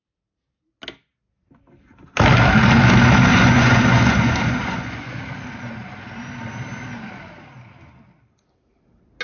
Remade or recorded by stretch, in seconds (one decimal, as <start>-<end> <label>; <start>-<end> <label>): 0.0-3.3 recorded; 3.3-5.2 remade; 5.2-9.2 recorded